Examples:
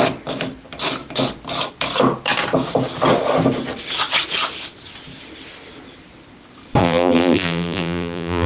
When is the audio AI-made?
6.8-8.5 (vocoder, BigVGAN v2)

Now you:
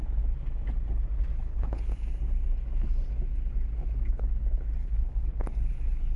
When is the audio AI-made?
1.3-1.8 (codec, HILCodec); 4.8-5.4

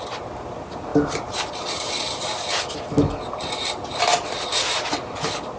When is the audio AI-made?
none

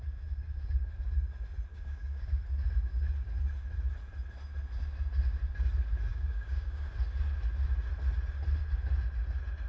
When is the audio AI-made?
1.7-2.4 (codec, DAC); 6.1-6.9